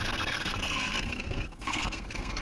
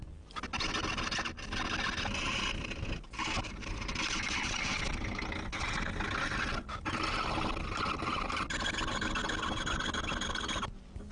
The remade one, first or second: first